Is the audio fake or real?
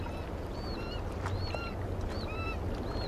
real